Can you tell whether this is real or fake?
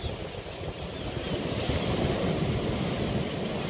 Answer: real